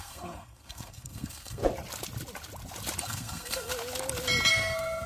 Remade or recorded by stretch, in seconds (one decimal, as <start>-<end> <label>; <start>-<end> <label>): 0.0-1.6 remade; 1.6-3.0 recorded; 3.0-3.7 remade; 3.7-4.5 recorded; 4.5-5.1 remade